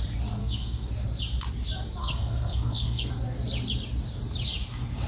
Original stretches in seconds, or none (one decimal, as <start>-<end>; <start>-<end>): 0.0-0.4; 0.9-2.0; 3.1-5.1